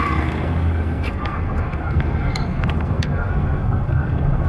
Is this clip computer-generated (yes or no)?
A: yes